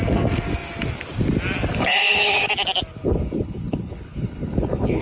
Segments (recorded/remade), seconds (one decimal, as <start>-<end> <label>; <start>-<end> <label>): 0.0-1.7 recorded; 1.7-2.5 remade; 2.5-2.9 recorded; 2.9-5.0 remade

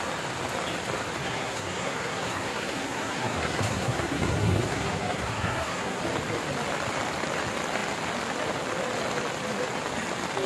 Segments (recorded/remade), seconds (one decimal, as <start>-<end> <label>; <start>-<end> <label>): 0.0-1.2 recorded; 1.2-6.0 remade; 6.0-10.5 recorded

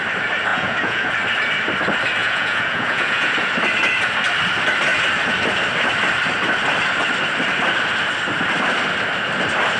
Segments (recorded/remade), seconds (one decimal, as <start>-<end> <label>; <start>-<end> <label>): 0.0-0.5 recorded; 0.5-1.1 remade; 1.1-2.2 recorded; 2.2-3.3 remade; 3.3-9.8 recorded

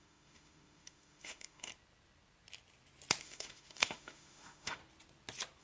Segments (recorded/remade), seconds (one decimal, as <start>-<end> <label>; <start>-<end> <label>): 0.0-1.7 remade; 1.7-3.2 recorded; 3.2-4.8 remade; 4.8-5.6 recorded

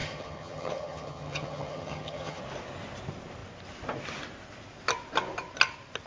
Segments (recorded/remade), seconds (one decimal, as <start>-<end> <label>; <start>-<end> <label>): 0.0-2.4 remade; 2.4-6.1 recorded